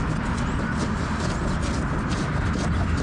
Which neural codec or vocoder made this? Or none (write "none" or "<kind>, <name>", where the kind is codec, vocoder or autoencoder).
none